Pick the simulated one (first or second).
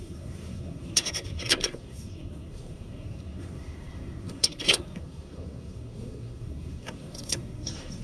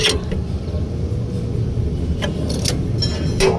first